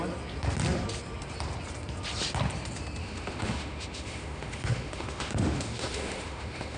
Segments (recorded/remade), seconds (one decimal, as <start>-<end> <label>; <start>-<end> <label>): 0.0-3.0 recorded; 3.0-6.8 remade